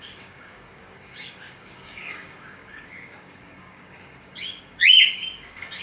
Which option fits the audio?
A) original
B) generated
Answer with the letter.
B